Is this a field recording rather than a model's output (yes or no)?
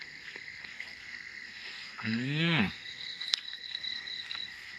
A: no